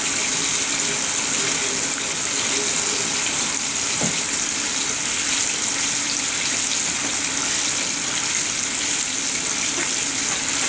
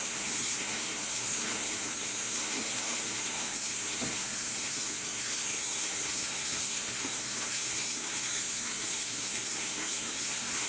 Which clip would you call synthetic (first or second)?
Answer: second